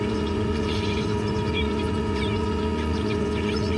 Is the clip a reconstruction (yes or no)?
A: yes